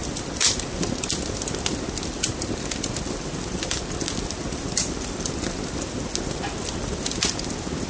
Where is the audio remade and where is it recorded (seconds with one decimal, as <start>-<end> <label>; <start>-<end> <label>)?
0.0-7.9 recorded